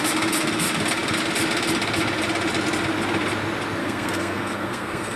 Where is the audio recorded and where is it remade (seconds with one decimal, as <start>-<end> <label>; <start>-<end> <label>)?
0.0-3.8 recorded; 3.8-5.2 remade